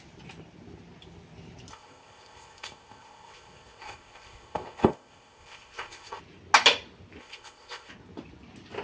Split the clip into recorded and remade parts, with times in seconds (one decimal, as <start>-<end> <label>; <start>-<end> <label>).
0.0-1.7 recorded; 1.7-6.2 remade; 6.2-7.2 recorded; 7.2-7.9 remade; 7.9-8.8 recorded